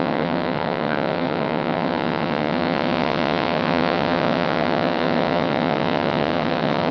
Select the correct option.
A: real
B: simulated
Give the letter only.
B